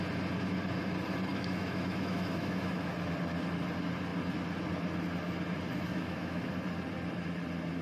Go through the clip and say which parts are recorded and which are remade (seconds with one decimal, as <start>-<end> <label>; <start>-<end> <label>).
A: 0.0-1.3 recorded; 1.3-2.9 remade; 2.9-5.9 recorded; 5.9-6.5 remade; 6.5-7.8 recorded